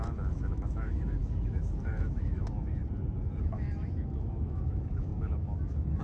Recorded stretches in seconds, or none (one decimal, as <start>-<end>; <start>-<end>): 2.8-3.4